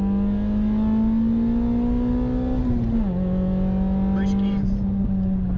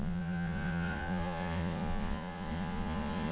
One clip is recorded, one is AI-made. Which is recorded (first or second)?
first